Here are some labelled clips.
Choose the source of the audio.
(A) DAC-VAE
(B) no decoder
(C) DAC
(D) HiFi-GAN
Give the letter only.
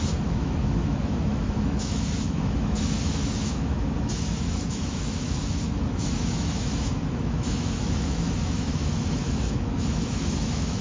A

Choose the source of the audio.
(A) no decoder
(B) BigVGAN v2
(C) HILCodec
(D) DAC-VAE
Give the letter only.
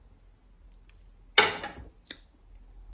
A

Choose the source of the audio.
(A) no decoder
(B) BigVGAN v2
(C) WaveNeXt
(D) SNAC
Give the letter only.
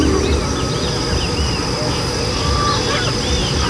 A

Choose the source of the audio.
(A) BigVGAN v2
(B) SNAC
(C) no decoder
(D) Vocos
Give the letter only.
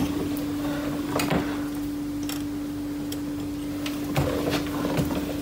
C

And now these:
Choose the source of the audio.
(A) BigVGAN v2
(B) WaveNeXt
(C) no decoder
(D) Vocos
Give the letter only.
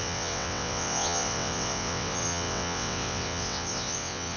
B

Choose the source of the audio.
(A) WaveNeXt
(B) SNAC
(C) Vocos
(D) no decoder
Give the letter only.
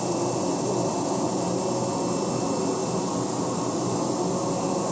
D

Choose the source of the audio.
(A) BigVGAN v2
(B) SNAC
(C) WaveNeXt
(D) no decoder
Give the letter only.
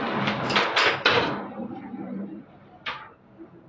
A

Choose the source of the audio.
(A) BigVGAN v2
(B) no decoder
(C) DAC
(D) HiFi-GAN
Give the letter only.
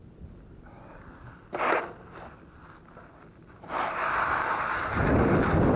A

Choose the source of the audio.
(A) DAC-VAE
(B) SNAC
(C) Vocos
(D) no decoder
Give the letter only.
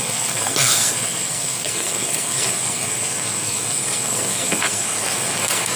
B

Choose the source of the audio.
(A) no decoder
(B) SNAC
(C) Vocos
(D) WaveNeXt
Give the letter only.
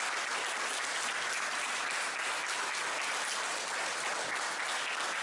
A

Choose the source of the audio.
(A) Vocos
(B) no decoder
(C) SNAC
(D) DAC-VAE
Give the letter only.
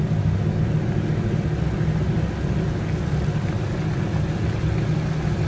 B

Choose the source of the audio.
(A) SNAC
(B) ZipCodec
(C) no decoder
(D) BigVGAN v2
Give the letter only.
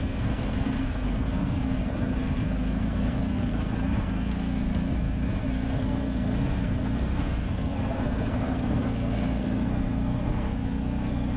A